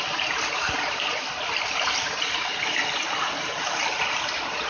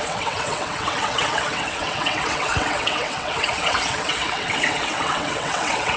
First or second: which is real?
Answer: first